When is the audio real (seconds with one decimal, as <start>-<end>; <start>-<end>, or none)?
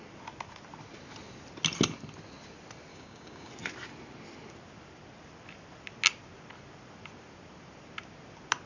0.0-2.9; 3.5-8.7